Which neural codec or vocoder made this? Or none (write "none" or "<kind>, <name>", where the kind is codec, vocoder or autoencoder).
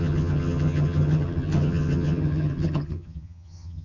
vocoder, HiFi-GAN